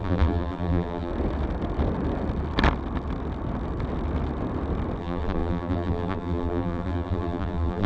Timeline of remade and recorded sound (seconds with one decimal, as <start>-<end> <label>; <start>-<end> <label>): 0.0-1.1 remade; 1.1-5.0 recorded; 5.0-7.9 remade